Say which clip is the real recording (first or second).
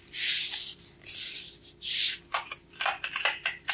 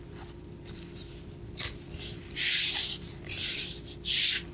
first